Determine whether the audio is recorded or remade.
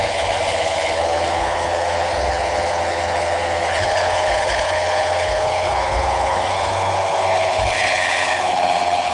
remade